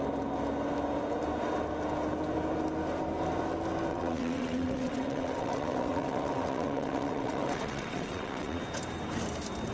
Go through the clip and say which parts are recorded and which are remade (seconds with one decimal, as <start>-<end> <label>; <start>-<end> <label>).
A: 0.0-3.9 recorded; 3.9-8.6 remade; 8.6-9.7 recorded